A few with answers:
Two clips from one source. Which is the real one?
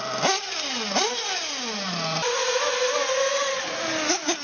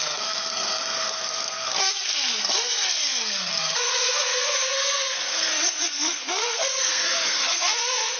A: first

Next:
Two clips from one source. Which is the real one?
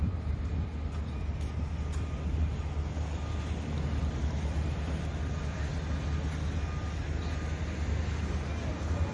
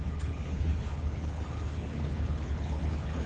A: first